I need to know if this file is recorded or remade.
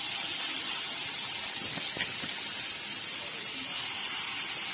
recorded